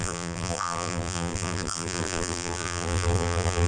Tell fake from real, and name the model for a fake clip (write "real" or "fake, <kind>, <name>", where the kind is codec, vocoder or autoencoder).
fake, vocoder, BigVGAN v2